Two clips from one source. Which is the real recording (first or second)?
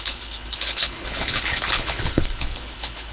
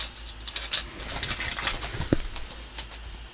second